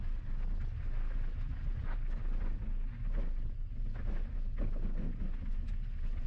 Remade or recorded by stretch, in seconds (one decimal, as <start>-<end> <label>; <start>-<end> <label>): 0.0-6.3 recorded